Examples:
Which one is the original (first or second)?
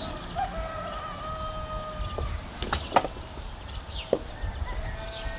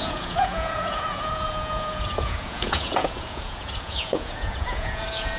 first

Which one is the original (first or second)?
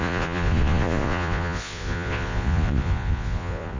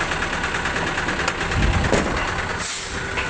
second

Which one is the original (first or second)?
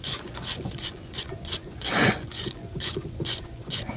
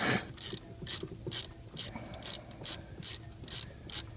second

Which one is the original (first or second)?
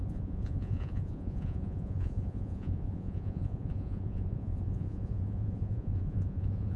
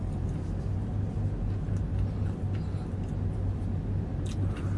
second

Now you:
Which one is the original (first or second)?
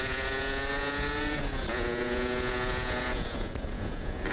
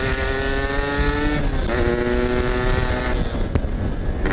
second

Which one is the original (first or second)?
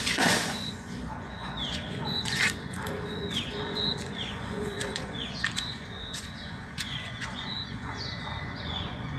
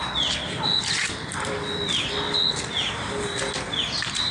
second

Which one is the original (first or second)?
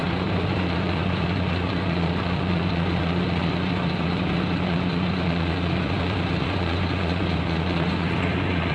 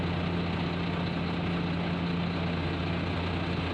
second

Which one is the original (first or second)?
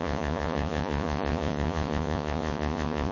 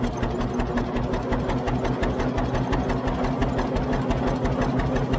second